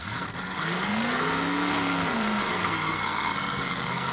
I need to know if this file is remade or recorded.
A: remade